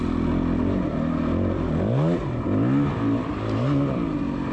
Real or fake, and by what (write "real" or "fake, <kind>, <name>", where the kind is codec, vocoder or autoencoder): real